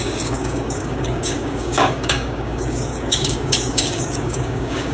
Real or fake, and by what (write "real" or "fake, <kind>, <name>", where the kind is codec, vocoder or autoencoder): fake, codec, DAC